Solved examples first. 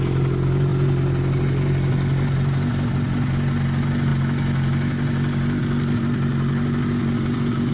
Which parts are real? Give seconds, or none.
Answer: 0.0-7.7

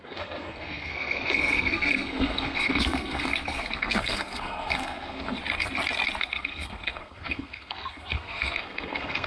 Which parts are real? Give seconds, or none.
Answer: 5.4-6.2

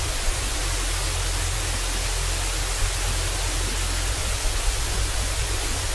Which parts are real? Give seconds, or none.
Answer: 0.6-4.1

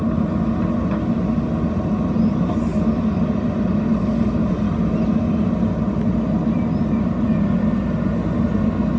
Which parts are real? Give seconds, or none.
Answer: 0.0-9.0